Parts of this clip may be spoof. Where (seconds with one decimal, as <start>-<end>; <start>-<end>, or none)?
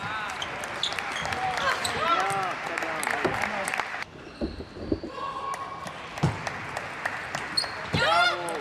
none